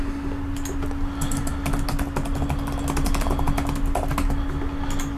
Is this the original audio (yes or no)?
yes